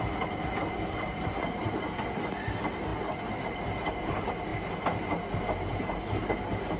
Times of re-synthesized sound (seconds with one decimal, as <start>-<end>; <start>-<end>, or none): none